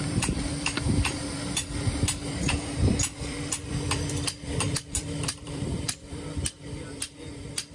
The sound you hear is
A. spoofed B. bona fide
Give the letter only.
A